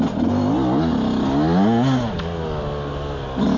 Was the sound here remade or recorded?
recorded